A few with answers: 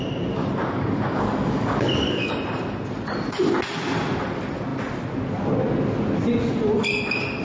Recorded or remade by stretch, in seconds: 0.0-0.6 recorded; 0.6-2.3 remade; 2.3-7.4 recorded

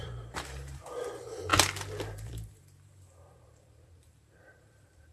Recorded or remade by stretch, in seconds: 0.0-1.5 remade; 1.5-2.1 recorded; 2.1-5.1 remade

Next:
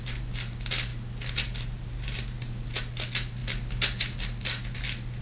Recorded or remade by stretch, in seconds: 0.0-5.2 recorded